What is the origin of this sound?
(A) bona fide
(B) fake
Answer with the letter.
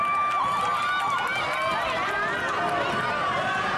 A